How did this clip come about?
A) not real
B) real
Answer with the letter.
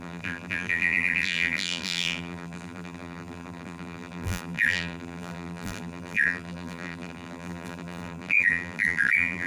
A